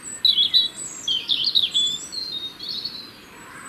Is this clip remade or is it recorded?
recorded